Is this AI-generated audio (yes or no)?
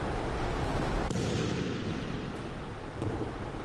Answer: no